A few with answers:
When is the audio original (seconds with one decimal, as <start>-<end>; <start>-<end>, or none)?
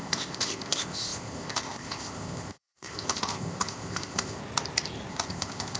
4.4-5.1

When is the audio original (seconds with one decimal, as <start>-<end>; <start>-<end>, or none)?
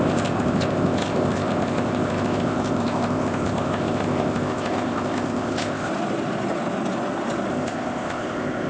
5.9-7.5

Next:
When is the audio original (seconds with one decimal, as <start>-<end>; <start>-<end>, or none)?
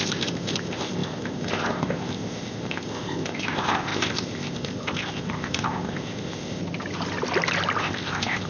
6.6-7.8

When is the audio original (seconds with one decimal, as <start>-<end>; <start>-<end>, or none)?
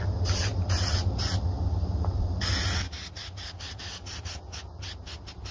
0.0-5.5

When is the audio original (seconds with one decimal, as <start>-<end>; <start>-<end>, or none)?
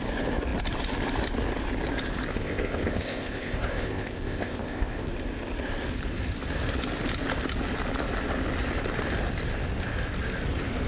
0.0-2.3; 5.1-10.9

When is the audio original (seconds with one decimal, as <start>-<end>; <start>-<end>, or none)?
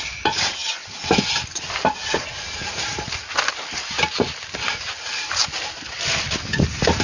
0.0-7.0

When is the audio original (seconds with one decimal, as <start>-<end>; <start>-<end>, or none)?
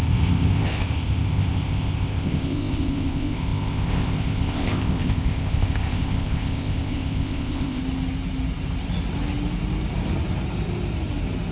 7.8-11.5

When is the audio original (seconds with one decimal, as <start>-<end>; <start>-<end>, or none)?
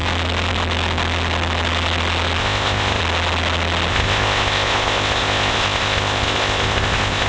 0.0-2.4; 3.0-3.9